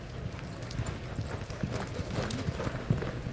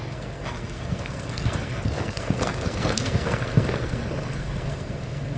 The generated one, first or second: second